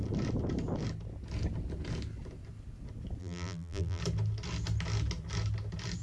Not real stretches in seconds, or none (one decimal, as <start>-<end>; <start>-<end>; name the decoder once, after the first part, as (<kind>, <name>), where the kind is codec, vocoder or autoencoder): 3.2-4.0 (vocoder, BigVGAN v2)

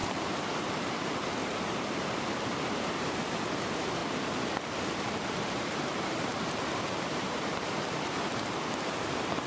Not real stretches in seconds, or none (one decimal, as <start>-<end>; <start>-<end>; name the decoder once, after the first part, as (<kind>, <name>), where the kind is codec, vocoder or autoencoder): 0.0-0.9 (vocoder, BigVGAN v2); 1.4-2.2; 4.0-7.7

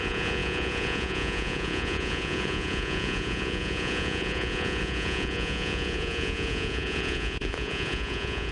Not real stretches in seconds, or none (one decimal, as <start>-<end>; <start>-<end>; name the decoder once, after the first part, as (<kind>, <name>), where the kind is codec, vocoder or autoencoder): 0.0-8.5 (vocoder, Vocos)

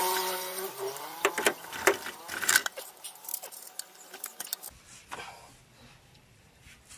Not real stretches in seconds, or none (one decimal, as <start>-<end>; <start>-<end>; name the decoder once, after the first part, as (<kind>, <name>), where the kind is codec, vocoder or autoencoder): 0.0-1.3 (vocoder, BigVGAN v2); 2.6-3.7

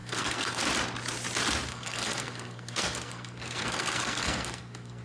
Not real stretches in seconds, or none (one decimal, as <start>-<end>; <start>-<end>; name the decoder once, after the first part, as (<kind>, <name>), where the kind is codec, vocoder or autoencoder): 0.0-0.6 (codec, SNAC); 1.7-5.0

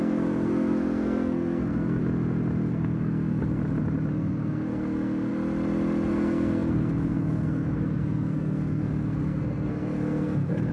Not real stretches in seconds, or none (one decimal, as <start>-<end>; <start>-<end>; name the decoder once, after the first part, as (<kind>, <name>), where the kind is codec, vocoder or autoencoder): 0.0-2.0 (codec, SNAC); 2.7-3.6; 4.1-5.3; 6.1-10.7

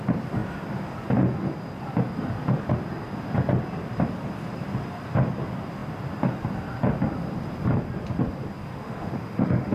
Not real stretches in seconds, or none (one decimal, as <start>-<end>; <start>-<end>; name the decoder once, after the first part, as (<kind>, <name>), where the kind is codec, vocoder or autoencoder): 8.7-9.7 (autoencoder, DAC-VAE)